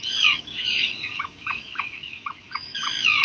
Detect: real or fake fake